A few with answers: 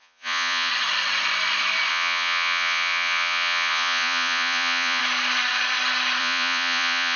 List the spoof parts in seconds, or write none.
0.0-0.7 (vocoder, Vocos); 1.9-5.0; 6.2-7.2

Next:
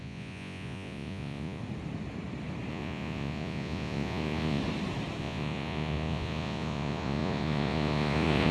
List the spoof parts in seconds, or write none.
0.0-1.6 (vocoder, Vocos); 2.7-4.6; 5.2-8.5

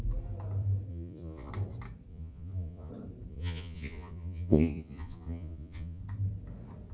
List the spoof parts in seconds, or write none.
0.9-1.5 (vocoder, Vocos); 2.1-2.9; 3.3-6.0

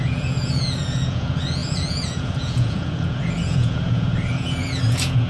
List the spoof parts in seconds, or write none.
0.0-5.3 (vocoder, Vocos)

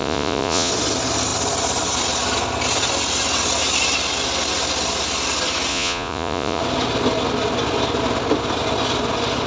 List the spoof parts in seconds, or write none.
0.0-0.7 (vocoder, Vocos); 5.7-6.6

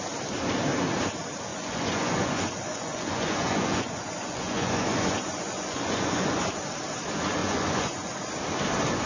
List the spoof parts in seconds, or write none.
1.5-6.4 (vocoder, Vocos); 7.4-8.3

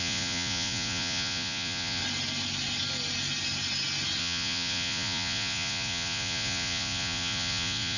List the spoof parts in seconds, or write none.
0.0-2.0 (vocoder, Vocos); 4.2-8.0

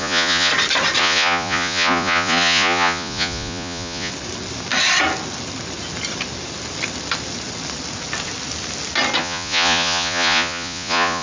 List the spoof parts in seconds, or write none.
0.0-0.5 (vocoder, Vocos); 1.0-4.1; 9.2-11.2